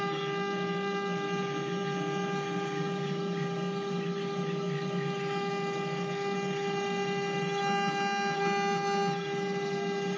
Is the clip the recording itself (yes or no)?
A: yes